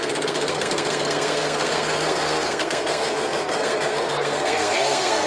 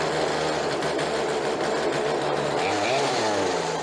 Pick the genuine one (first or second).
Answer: second